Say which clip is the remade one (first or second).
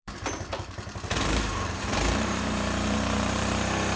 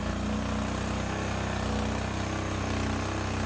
first